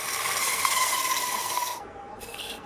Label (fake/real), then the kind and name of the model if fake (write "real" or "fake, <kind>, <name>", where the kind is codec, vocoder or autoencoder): fake, codec, SNAC